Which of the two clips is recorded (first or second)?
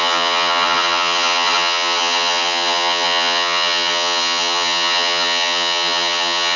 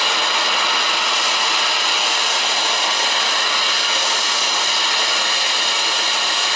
second